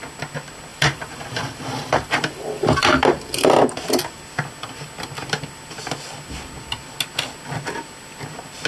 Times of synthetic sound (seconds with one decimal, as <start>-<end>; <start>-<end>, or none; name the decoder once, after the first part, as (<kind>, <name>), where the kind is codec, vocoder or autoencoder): 0.7-3.6 (vocoder, BigVGAN v2)

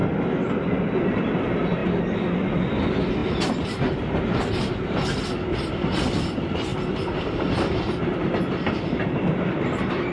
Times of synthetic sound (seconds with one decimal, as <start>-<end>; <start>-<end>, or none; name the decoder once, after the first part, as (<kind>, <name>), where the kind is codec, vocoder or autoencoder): 1.1-6.7 (vocoder, BigVGAN v2); 7.7-10.1

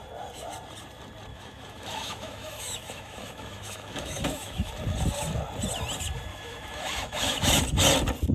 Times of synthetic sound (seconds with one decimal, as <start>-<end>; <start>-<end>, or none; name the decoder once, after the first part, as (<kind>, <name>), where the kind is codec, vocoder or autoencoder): 1.3-4.7 (autoencoder, DAC-VAE); 6.3-7.6

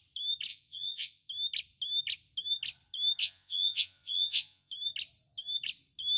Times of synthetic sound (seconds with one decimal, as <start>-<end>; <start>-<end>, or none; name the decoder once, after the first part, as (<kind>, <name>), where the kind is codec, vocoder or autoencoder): 0.5-1.3 (vocoder, Vocos); 3.2-4.7

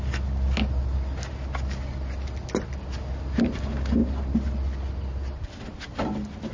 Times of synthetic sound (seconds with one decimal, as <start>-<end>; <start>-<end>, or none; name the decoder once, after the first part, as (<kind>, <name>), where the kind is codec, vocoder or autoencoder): none

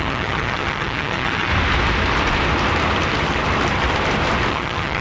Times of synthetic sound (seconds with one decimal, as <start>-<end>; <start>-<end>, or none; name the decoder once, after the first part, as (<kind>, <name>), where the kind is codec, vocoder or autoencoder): 0.0-1.5 (vocoder, HiFi-GAN); 4.5-5.0

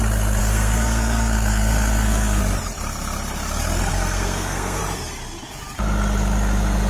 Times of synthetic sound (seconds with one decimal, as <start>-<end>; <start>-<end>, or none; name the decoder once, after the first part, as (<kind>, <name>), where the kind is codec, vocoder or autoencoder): 0.4-2.4 (codec, SNAC); 3.9-4.8

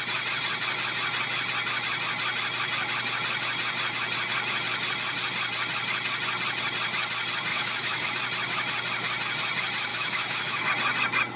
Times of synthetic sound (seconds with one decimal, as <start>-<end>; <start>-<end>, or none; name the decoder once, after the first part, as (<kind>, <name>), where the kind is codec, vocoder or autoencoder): 7.5-8.1 (autoencoder, DAC-VAE); 9.9-10.7